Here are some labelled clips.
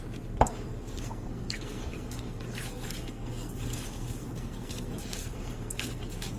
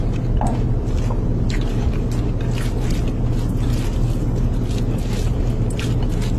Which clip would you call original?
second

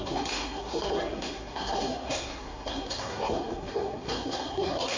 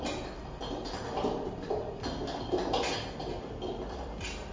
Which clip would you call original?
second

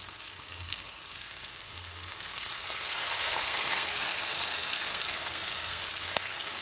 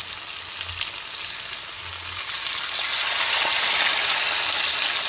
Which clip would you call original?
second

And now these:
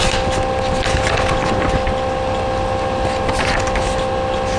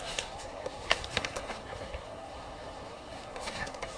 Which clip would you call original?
first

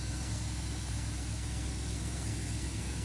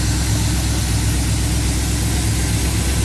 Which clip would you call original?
second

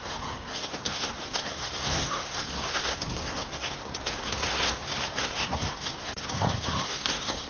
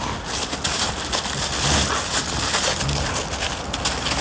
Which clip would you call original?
second